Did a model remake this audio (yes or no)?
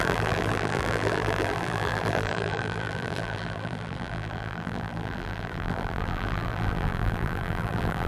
yes